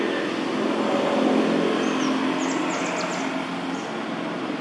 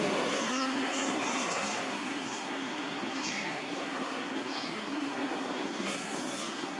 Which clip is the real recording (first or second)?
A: first